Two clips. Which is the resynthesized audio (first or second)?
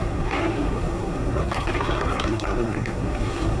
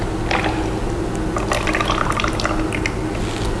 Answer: first